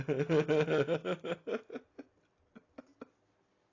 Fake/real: real